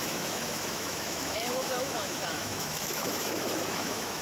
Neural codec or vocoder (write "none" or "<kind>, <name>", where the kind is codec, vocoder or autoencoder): autoencoder, DAC-VAE